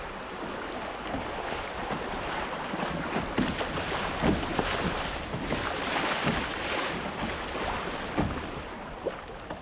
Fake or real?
real